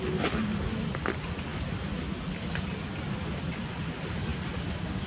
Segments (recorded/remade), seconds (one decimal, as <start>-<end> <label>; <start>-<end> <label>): 0.0-5.1 recorded